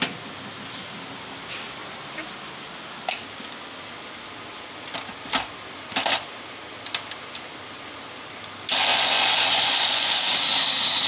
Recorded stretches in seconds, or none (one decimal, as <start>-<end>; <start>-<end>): 0.0-8.9; 10.3-11.1